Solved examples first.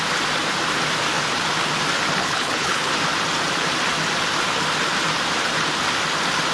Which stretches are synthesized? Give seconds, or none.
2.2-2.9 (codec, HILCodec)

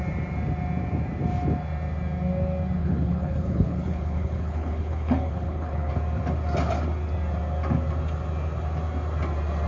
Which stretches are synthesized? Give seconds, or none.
2.8-5.9 (codec, HILCodec)